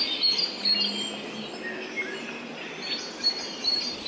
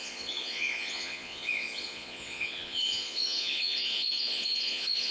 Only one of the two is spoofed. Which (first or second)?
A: second